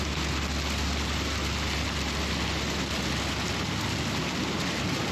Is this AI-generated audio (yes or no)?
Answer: no